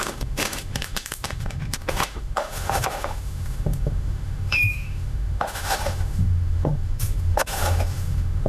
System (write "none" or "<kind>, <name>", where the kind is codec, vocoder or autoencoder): autoencoder, DAC-VAE